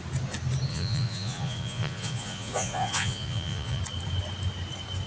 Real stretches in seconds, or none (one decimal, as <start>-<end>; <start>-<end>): 0.0-0.7; 3.8-5.1